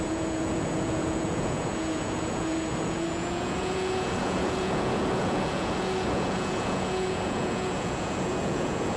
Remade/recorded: remade